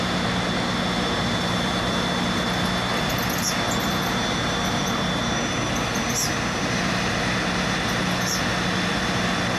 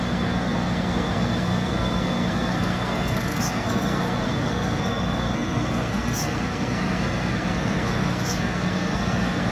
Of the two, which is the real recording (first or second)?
first